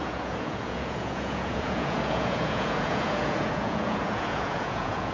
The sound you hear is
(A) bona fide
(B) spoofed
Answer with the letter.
B